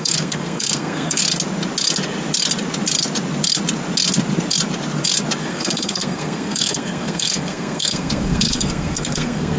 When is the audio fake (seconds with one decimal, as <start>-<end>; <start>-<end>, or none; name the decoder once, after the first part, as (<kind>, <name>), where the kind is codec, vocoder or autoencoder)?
0.0-1.2 (codec, SNAC); 5.4-9.6